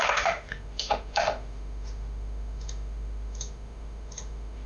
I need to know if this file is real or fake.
fake